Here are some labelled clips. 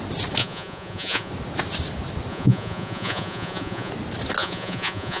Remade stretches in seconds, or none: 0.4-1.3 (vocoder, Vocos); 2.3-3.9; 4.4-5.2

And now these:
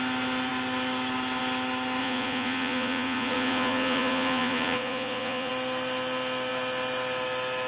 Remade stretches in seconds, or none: 2.0-5.5 (vocoder, Vocos)

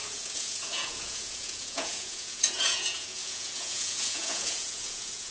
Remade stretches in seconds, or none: 0.0-5.3 (vocoder, Vocos)

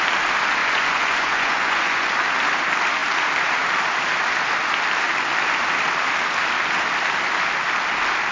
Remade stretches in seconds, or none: 0.6-2.1 (vocoder, Vocos)

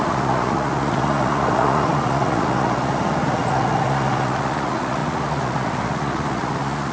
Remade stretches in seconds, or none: 0.0-6.9 (vocoder, Vocos)

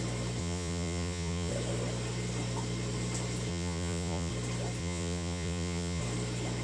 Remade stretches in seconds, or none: 0.4-1.5 (vocoder, Vocos); 3.5-4.3; 4.8-6.0